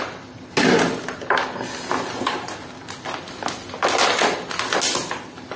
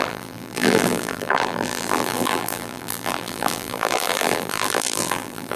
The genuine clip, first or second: first